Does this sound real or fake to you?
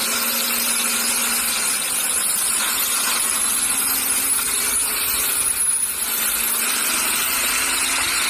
real